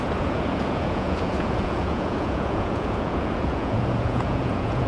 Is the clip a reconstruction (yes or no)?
yes